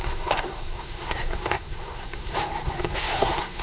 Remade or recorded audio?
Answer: remade